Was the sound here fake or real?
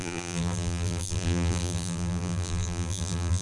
fake